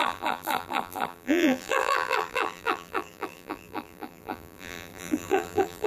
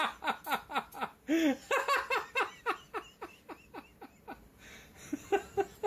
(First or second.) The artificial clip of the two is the first